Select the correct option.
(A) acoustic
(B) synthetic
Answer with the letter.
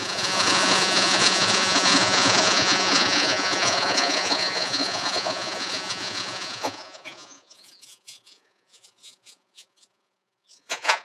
B